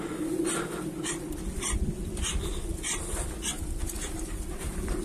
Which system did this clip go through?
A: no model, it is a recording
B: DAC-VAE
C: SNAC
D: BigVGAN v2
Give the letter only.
A